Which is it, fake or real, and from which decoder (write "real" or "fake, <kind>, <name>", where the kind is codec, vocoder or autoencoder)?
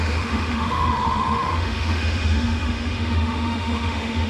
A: fake, autoencoder, DAC-VAE